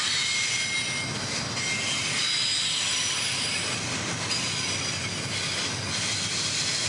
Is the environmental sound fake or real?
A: real